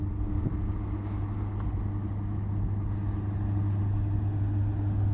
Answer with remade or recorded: recorded